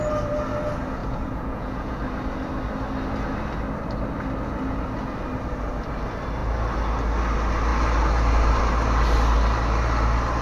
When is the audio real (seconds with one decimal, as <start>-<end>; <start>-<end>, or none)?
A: 0.0-1.0; 2.0-10.4